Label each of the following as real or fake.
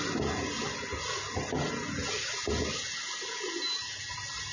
real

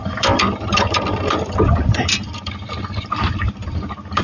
fake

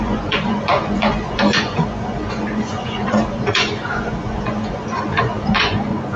fake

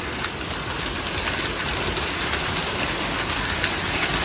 real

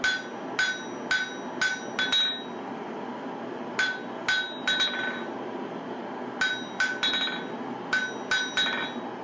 real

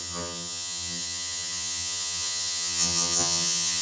fake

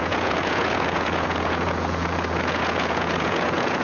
fake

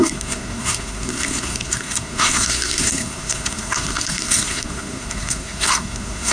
fake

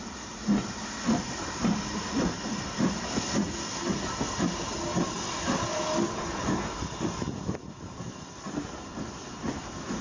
real